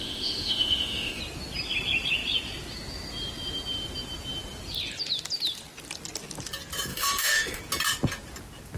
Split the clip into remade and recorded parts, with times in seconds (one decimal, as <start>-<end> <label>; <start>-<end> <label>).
0.0-1.2 remade; 1.2-6.9 recorded; 6.9-7.6 remade; 7.6-8.8 recorded